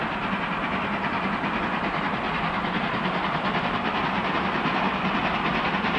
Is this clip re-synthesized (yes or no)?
no